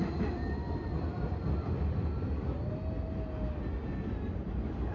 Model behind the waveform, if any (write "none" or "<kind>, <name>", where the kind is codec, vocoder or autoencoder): none